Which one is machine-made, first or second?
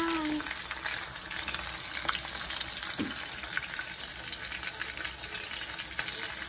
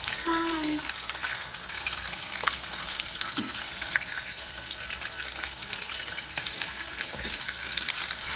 second